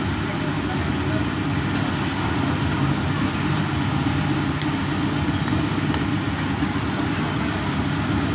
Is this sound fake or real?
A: real